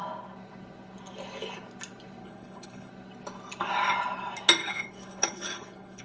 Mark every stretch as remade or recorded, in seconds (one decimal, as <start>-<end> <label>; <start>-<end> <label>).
0.0-2.2 recorded; 2.2-2.9 remade; 2.9-4.6 recorded; 4.6-6.0 remade